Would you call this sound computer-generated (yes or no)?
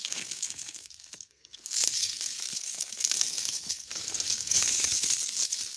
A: yes